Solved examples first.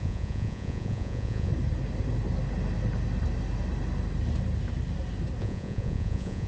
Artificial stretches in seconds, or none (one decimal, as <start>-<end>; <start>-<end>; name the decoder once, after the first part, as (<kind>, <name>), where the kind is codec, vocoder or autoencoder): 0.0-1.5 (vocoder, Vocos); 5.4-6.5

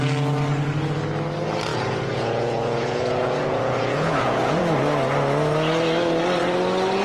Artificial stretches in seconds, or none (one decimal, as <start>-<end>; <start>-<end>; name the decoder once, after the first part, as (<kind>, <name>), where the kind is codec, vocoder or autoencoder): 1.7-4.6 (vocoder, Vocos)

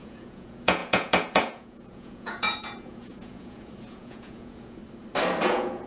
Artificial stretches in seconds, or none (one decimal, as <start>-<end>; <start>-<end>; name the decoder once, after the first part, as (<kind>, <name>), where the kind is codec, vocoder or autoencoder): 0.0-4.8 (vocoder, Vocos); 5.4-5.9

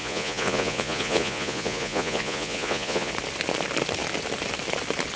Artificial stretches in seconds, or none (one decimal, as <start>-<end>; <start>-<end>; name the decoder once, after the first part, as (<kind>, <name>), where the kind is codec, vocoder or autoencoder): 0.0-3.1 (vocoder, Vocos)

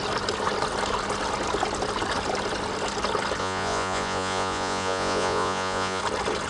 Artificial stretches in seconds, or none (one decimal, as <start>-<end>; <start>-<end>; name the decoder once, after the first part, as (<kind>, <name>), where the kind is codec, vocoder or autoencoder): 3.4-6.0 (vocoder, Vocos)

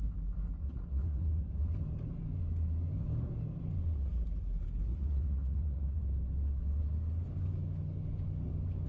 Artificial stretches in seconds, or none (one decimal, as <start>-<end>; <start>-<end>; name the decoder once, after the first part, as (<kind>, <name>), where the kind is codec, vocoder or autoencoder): 0.6-1.4 (vocoder, Vocos); 4.9-6.0

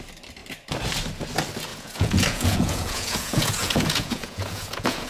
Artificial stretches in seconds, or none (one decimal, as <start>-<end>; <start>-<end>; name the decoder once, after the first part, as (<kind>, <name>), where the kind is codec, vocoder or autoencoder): 1.7-5.1 (vocoder, Vocos)

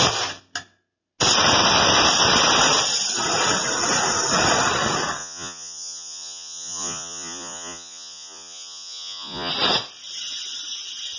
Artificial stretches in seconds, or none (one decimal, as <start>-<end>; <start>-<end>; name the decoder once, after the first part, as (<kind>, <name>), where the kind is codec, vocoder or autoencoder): 5.2-9.5 (vocoder, Vocos)